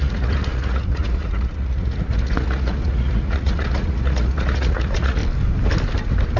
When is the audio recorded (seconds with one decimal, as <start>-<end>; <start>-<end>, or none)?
5.2-6.4